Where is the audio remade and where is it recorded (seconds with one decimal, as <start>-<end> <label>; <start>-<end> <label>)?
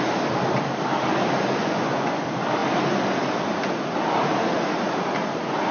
0.0-1.6 recorded; 1.6-2.2 remade; 2.2-5.7 recorded